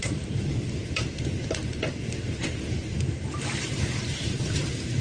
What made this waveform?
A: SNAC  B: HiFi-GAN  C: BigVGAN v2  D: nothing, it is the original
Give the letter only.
C